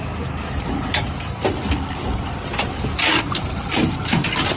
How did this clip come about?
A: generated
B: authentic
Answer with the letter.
B